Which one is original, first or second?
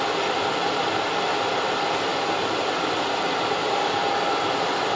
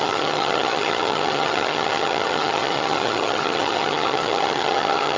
first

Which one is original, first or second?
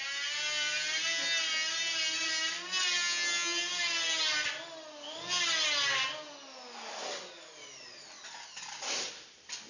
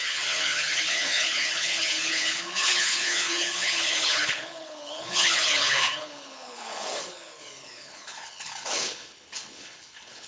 first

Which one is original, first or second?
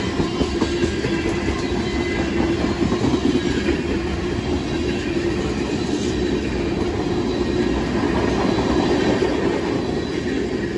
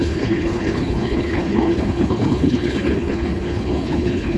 first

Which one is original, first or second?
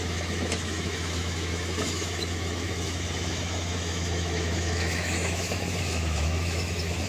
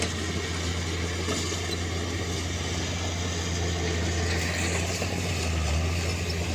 second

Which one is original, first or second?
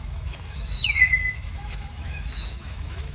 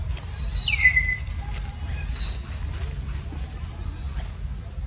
second